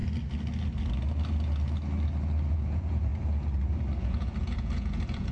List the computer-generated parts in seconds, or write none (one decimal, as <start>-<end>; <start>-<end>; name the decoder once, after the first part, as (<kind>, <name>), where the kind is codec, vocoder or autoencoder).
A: 2.5-3.1 (vocoder, Vocos); 4.0-5.3